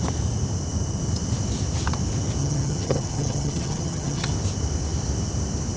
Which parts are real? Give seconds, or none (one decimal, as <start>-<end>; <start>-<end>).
0.0-2.4; 4.3-5.8